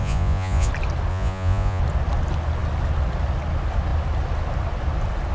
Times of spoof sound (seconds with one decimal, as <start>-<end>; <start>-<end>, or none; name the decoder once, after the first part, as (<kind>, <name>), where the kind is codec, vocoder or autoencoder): 0.0-0.7 (vocoder, Vocos); 1.1-1.8